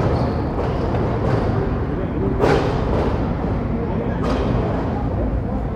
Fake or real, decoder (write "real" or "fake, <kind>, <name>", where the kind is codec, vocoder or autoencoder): real